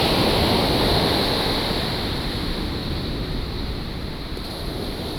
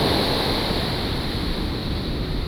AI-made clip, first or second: second